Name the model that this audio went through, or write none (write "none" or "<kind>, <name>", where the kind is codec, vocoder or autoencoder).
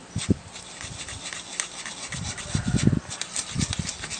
none